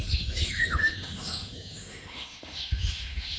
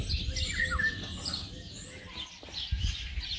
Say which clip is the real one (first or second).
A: second